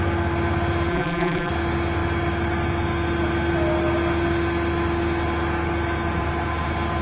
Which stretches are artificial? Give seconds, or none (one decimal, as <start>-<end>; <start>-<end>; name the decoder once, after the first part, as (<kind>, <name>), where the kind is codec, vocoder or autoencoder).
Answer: 0.9-1.5 (vocoder, BigVGAN v2)